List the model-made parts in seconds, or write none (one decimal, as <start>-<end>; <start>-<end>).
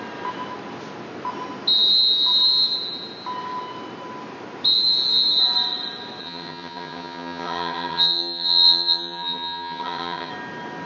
6.2-10.3